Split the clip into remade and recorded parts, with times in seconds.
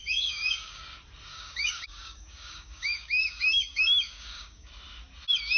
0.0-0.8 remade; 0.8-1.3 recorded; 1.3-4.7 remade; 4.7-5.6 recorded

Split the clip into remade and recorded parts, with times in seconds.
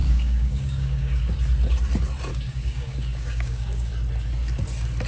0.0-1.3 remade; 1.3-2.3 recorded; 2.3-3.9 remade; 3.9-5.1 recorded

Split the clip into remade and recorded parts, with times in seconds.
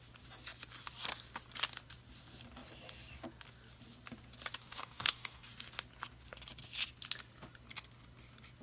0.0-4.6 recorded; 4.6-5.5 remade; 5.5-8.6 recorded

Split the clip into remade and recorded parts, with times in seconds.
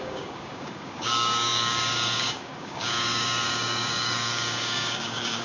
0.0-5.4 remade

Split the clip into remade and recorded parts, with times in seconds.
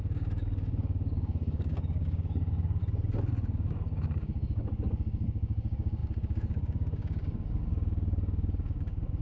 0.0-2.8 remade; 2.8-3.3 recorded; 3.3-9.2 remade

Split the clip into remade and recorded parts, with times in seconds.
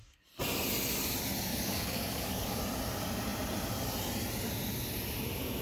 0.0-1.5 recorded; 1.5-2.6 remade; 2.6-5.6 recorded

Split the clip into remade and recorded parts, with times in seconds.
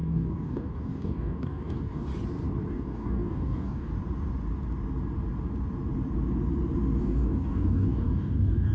0.0-2.1 remade; 2.1-2.7 recorded; 2.7-3.9 remade; 3.9-7.0 recorded; 7.0-8.7 remade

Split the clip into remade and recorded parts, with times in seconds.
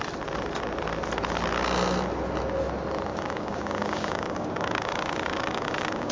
0.0-3.1 recorded; 3.1-6.1 remade